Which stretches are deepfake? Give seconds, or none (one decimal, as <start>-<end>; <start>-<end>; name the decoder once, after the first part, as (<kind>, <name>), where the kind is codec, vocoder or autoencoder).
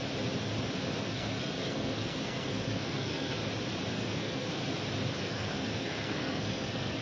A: 1.0-3.4 (codec, SNAC); 3.9-4.6; 5.2-7.0